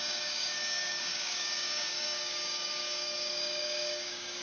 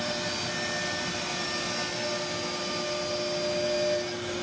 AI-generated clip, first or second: first